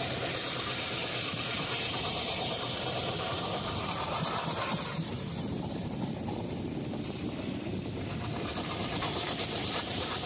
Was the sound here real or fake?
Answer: fake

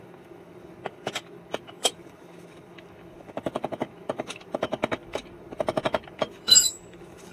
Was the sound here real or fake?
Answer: fake